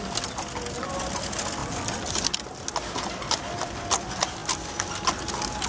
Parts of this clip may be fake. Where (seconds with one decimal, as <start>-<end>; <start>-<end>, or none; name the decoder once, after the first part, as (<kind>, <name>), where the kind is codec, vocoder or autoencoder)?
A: none